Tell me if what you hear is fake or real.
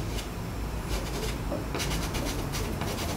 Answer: real